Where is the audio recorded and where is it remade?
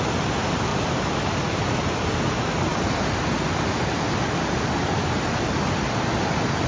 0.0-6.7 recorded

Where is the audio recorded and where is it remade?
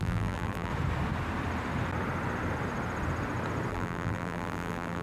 0.0-0.7 remade; 0.7-3.7 recorded; 3.7-5.0 remade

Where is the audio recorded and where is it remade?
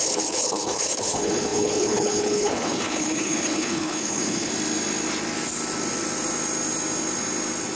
0.0-4.5 remade; 4.5-7.8 recorded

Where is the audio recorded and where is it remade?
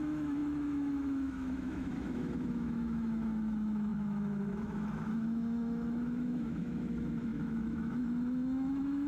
0.0-9.1 remade